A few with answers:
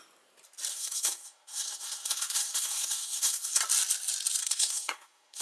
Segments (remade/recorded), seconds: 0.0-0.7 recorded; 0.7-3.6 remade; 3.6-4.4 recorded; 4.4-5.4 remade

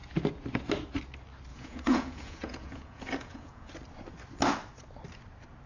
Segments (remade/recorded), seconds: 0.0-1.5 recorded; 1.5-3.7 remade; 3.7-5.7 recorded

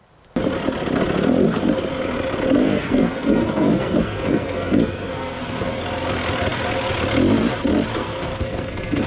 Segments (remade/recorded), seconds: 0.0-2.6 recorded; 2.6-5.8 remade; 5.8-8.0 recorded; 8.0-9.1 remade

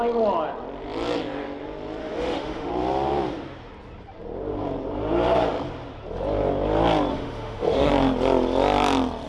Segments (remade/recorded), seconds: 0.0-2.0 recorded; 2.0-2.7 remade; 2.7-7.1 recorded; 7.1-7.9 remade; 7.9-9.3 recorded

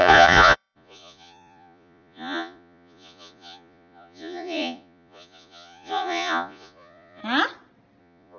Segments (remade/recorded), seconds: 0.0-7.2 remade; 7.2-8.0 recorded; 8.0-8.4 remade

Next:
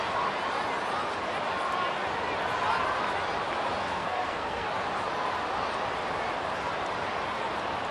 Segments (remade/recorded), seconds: 0.0-3.8 recorded; 3.8-4.7 remade; 4.7-7.9 recorded

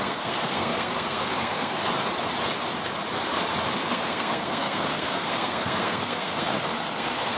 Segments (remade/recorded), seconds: 0.0-1.8 remade; 1.8-3.9 recorded; 3.9-7.4 remade